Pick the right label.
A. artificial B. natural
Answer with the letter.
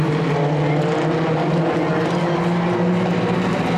B